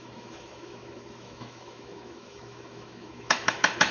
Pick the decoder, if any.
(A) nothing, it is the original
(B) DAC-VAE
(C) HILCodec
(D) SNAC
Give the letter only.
B